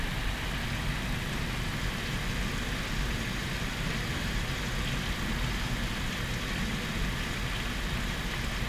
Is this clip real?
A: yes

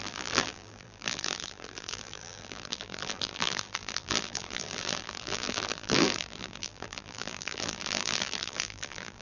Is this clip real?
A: no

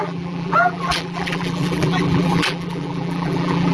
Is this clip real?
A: no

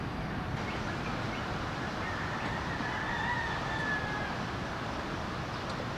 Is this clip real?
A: yes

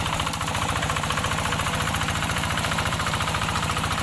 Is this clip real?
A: no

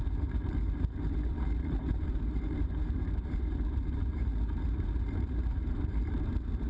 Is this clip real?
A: no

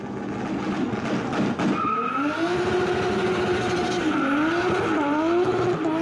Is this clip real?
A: yes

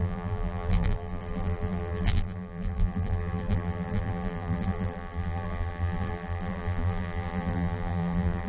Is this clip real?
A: no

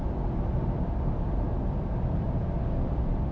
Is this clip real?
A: yes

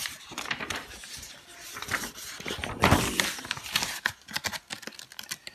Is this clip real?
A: yes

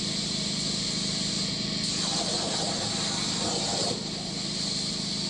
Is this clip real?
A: no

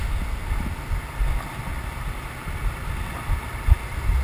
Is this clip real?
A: yes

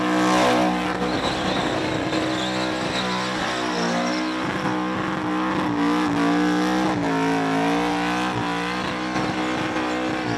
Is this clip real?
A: yes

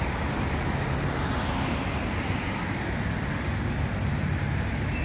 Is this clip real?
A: yes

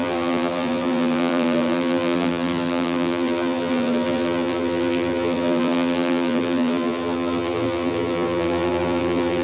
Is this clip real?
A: no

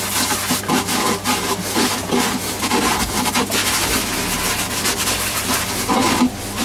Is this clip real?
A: yes